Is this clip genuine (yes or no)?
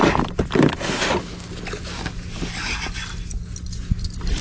yes